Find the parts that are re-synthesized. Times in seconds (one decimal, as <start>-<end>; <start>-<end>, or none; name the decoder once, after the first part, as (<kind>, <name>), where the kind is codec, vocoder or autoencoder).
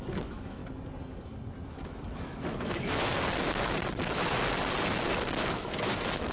0.0-0.6 (autoencoder, DAC-VAE); 1.7-3.1; 5.5-6.3